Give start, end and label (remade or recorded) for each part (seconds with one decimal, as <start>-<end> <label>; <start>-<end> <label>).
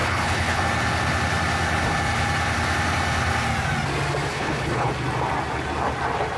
0.0-0.6 remade; 0.6-4.3 recorded; 4.3-4.9 remade; 4.9-6.4 recorded